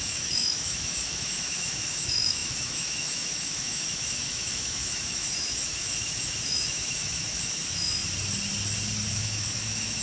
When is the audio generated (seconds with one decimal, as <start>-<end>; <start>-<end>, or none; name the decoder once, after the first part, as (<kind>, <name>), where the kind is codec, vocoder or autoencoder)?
0.0-8.0 (autoencoder, DAC-VAE); 9.1-10.0